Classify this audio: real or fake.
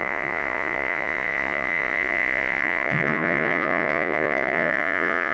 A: fake